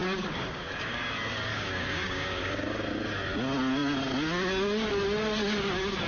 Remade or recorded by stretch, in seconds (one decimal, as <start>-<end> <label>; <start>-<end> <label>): 0.0-1.1 remade; 1.1-1.5 recorded; 1.5-2.5 remade; 2.5-6.1 recorded

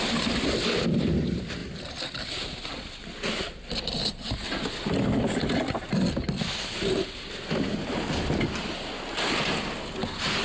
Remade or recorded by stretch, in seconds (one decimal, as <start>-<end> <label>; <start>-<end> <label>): 0.0-10.4 recorded

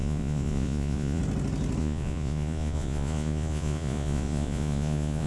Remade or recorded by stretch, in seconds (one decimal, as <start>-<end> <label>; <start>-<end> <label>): 0.0-1.2 remade; 1.2-1.8 recorded; 1.8-5.3 remade

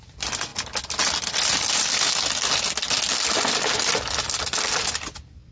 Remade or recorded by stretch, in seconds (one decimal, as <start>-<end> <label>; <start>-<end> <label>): 0.0-5.5 recorded